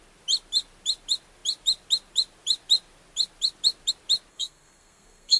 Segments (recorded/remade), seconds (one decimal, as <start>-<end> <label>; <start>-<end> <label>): 0.0-4.3 recorded; 4.3-5.4 remade